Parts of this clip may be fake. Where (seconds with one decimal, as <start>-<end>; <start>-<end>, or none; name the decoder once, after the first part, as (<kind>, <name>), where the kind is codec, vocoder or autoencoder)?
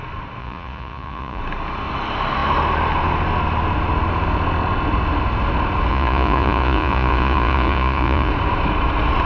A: 0.4-1.4 (vocoder, Vocos); 5.9-8.3